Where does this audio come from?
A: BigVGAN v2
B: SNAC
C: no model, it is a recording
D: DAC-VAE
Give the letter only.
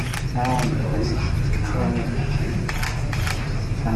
C